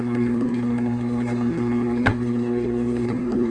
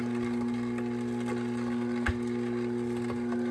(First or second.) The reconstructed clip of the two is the first